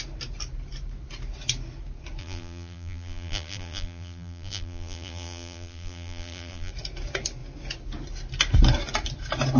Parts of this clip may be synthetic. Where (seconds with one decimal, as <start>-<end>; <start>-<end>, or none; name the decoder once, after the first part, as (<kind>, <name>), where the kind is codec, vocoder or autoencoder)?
2.2-6.7 (vocoder, BigVGAN v2)